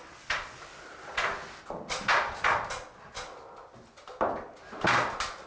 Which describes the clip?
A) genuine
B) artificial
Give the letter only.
A